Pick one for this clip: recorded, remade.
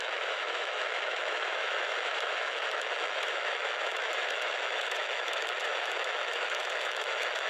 remade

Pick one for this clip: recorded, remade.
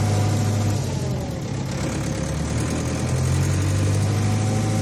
recorded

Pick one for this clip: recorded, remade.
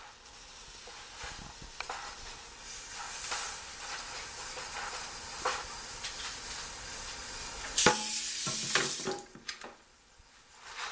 recorded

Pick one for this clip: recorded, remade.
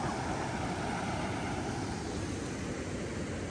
recorded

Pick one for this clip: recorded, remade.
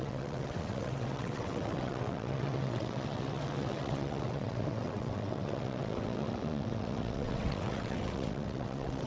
remade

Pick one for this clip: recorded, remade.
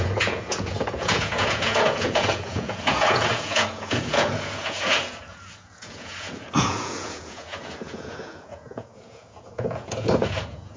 remade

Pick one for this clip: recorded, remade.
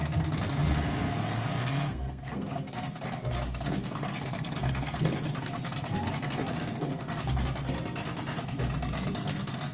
remade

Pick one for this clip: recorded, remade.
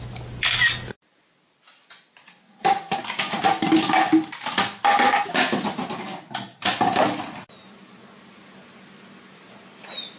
recorded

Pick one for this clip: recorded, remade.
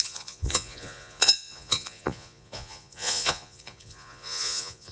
remade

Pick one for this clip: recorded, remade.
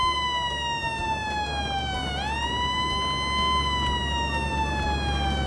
recorded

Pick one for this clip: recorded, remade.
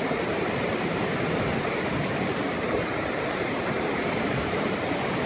remade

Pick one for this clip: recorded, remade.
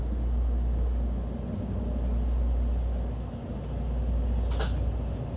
recorded